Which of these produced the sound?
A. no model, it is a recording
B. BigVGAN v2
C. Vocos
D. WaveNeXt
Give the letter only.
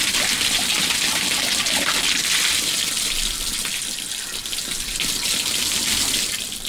A